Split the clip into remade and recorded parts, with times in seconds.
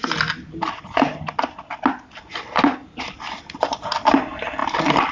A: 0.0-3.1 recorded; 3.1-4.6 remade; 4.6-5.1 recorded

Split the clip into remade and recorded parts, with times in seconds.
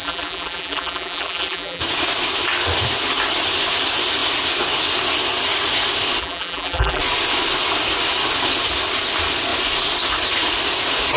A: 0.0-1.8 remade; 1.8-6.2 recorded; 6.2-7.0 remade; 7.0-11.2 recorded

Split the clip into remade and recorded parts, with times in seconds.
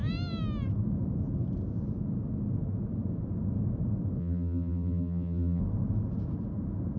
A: 0.0-4.2 recorded; 4.2-5.6 remade; 5.6-7.0 recorded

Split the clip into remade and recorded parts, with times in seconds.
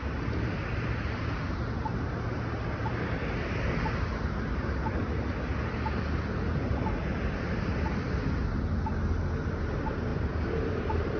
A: 0.0-10.1 recorded; 10.1-11.2 remade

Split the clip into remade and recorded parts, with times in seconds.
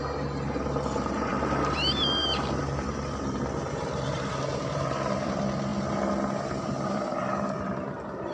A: 0.0-5.7 remade; 5.7-6.6 recorded; 6.6-8.3 remade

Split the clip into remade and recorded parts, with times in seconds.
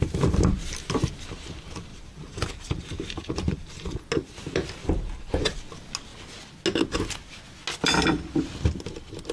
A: 0.0-1.9 recorded; 1.9-4.0 remade; 4.0-4.8 recorded; 4.8-5.6 remade; 5.6-9.3 recorded